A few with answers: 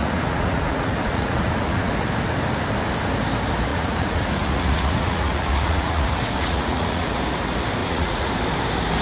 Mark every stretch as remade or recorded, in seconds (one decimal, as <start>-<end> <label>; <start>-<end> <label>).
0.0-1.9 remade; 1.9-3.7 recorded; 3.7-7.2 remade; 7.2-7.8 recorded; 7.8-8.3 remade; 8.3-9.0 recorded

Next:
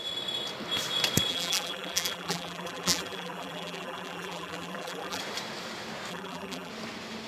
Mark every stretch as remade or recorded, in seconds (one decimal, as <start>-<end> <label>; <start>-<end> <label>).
0.0-1.3 recorded; 1.3-5.2 remade; 5.2-6.1 recorded; 6.1-6.7 remade; 6.7-7.3 recorded

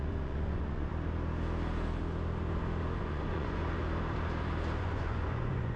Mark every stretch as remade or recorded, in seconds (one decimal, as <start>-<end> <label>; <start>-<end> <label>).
0.0-0.9 remade; 0.9-3.0 recorded; 3.0-3.6 remade; 3.6-4.8 recorded; 4.8-5.8 remade

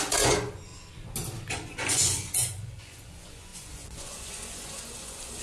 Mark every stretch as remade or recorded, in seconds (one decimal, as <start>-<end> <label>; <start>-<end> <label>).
0.0-0.7 remade; 0.7-1.5 recorded; 1.5-5.4 remade

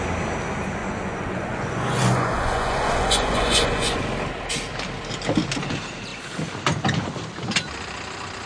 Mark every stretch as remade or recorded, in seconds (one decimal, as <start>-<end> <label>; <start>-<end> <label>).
0.0-0.8 recorded; 0.8-4.0 remade; 4.0-8.5 recorded

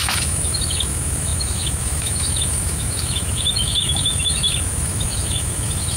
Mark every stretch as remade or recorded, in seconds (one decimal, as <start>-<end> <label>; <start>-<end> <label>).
0.0-6.0 remade

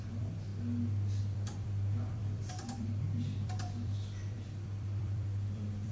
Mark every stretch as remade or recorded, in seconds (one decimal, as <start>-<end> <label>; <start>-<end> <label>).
0.0-0.5 remade; 0.5-1.2 recorded; 1.2-5.9 remade